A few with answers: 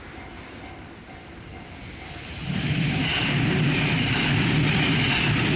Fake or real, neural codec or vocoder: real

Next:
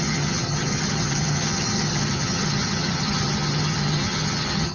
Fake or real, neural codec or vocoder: fake, vocoder, HiFi-GAN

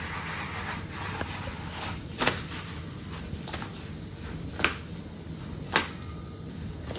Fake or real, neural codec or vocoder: real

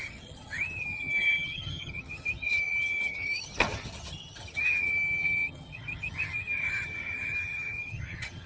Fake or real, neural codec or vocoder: fake, vocoder, HiFi-GAN